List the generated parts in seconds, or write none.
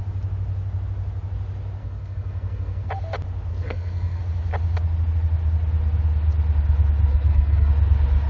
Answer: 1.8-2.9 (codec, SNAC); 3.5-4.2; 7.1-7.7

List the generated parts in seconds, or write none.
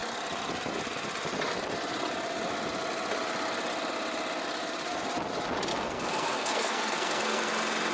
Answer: 5.7-7.5 (codec, SNAC)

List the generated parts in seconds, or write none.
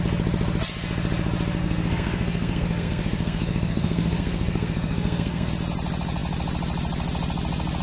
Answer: 1.6-5.5 (codec, SNAC)